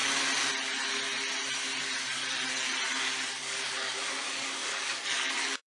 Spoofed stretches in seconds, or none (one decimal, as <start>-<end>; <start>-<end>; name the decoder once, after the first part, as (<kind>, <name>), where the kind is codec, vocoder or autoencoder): 3.3-5.8 (codec, DAC)